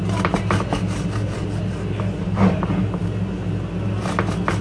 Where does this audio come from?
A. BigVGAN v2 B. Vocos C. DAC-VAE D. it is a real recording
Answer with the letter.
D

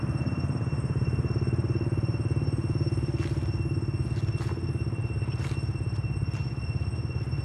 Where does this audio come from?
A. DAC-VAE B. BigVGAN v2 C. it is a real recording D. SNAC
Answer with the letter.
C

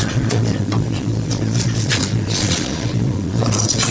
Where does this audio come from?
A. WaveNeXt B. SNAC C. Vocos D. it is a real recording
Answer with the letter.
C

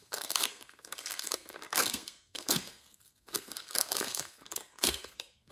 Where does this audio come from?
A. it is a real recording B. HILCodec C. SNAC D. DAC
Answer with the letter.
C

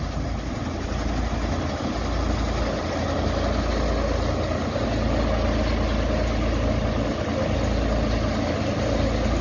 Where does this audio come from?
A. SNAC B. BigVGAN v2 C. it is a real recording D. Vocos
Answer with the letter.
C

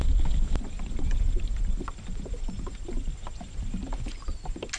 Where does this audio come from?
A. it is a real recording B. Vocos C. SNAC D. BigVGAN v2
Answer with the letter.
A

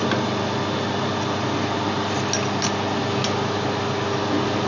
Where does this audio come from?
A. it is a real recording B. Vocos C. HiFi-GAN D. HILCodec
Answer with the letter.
A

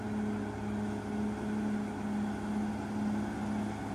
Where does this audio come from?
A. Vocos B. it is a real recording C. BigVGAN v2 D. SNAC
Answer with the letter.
B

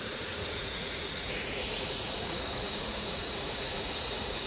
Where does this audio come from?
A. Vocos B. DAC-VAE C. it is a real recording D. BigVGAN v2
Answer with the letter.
A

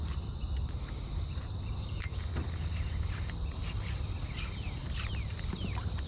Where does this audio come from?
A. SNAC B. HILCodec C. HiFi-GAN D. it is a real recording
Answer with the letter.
D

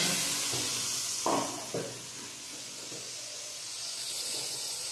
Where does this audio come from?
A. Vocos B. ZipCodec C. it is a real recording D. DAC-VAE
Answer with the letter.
A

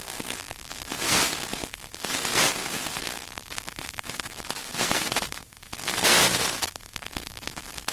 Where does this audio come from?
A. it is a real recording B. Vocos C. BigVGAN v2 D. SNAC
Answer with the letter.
D